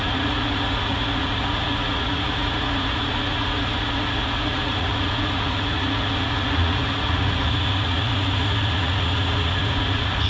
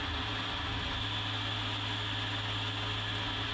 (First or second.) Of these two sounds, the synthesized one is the first